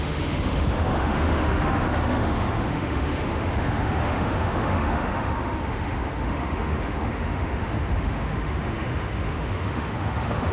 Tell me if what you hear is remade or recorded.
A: remade